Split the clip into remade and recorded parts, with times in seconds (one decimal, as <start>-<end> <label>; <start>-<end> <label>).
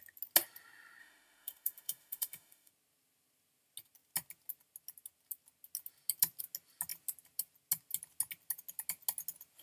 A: 0.0-1.0 recorded; 1.0-2.7 remade; 2.7-9.6 recorded